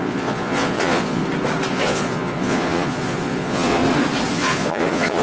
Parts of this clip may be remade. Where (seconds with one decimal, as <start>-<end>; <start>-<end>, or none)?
0.0-1.2; 1.7-3.8; 4.3-5.2